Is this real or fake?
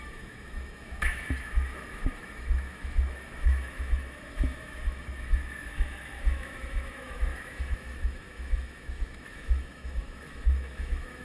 fake